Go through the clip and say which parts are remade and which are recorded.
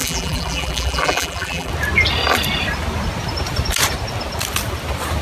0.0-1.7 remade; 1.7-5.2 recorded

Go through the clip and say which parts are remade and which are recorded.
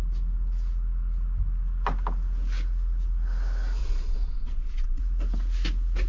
0.0-3.8 recorded; 3.8-5.0 remade; 5.0-6.1 recorded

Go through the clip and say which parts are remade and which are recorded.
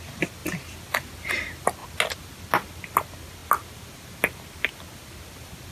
0.0-5.7 recorded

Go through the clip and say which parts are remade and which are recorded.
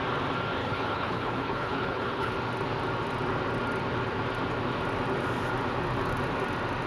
0.0-0.6 recorded; 0.6-2.3 remade; 2.3-6.9 recorded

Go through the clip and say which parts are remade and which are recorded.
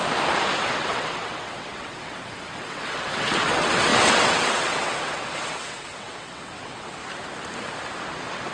0.0-0.6 recorded; 0.6-7.0 remade; 7.0-8.0 recorded; 8.0-8.5 remade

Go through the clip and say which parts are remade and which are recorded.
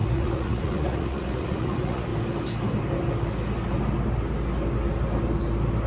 0.0-2.1 remade; 2.1-5.9 recorded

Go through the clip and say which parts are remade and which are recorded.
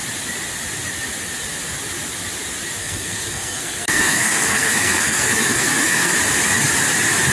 0.0-2.8 recorded; 2.8-6.1 remade; 6.1-7.3 recorded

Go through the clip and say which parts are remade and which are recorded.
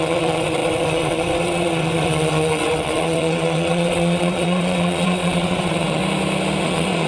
0.0-6.0 remade; 6.0-6.6 recorded; 6.6-7.1 remade